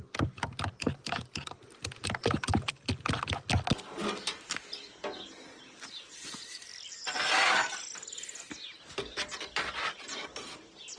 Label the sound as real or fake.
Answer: real